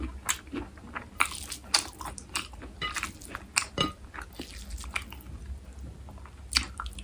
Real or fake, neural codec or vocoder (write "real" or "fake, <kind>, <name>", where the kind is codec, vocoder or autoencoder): real